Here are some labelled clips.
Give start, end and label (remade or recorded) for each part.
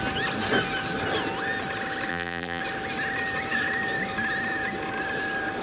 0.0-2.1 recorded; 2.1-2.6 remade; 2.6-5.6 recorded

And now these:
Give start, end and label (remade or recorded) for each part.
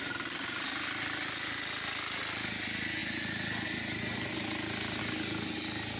0.0-6.0 recorded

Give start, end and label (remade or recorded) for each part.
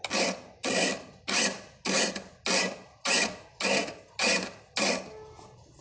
0.0-0.6 recorded; 0.6-2.3 remade; 2.3-5.8 recorded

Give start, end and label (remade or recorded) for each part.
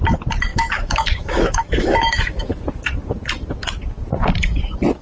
0.0-0.5 recorded; 0.5-2.6 remade; 2.6-5.0 recorded